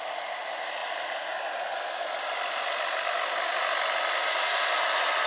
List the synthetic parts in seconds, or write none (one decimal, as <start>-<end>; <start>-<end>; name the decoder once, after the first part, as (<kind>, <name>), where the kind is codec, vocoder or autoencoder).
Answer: none

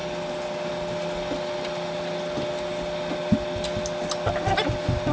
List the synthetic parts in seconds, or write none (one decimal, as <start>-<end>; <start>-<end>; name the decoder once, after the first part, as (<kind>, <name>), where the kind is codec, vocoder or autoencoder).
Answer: none